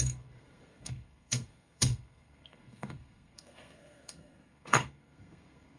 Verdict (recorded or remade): remade